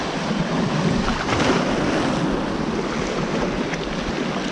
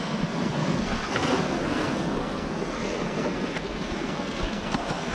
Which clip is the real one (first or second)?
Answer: first